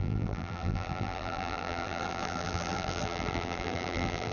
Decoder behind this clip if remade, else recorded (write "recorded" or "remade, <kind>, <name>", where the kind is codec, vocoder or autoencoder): remade, vocoder, BigVGAN v2